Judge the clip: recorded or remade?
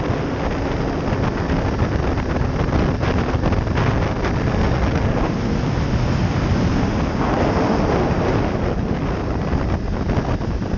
recorded